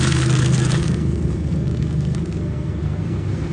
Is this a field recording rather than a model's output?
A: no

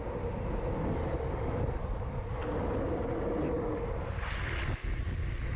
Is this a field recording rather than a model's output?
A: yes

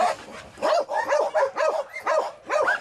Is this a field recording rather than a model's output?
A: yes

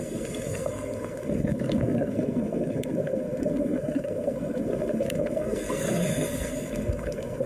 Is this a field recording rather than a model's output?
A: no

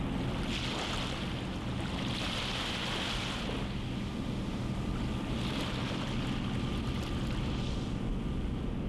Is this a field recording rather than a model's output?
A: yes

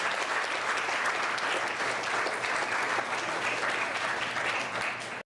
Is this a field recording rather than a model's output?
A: yes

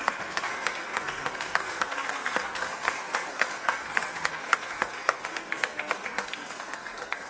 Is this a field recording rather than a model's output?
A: no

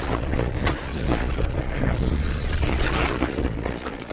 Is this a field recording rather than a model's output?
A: no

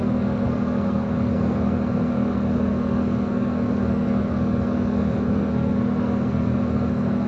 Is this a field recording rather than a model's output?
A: no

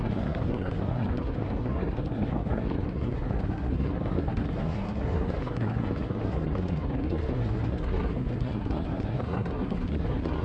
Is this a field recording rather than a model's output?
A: no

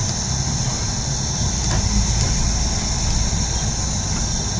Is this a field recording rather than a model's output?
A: yes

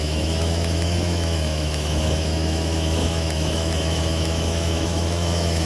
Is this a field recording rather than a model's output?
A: no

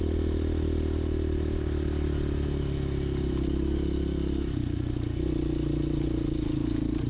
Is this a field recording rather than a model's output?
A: yes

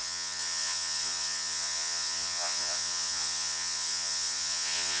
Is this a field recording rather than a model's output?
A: no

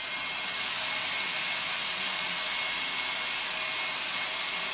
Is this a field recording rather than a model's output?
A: yes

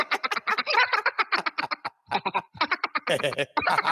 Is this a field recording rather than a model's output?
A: yes